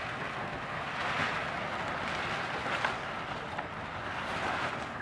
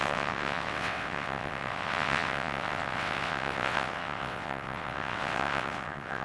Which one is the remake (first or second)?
second